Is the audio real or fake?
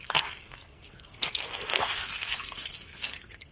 fake